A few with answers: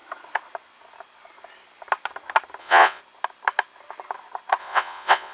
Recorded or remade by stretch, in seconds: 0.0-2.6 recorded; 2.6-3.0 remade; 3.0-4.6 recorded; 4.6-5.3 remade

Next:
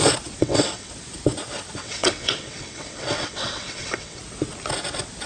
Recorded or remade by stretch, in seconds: 0.0-0.4 recorded; 0.4-0.9 remade; 0.9-1.8 recorded; 1.8-4.2 remade; 4.2-5.3 recorded

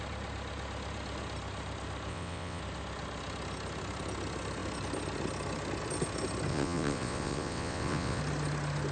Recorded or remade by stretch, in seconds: 0.0-2.1 recorded; 2.1-2.6 remade; 2.6-6.5 recorded; 6.5-8.2 remade; 8.2-8.9 recorded

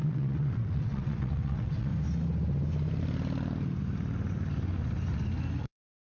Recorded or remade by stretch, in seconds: 0.0-1.9 remade; 1.9-5.6 recorded; 5.6-6.2 remade

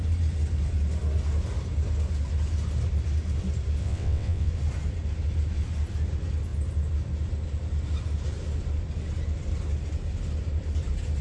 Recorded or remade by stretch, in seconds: 0.0-3.8 recorded; 3.8-4.5 remade; 4.5-11.2 recorded

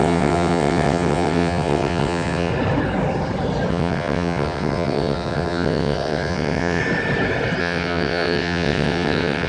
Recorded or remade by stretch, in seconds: 0.0-2.5 remade; 2.5-3.7 recorded; 3.7-6.8 remade; 6.8-7.6 recorded; 7.6-9.5 remade

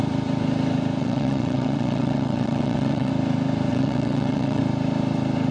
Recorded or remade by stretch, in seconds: 0.0-1.0 recorded; 1.0-3.1 remade; 3.1-3.7 recorded; 3.7-4.6 remade; 4.6-5.5 recorded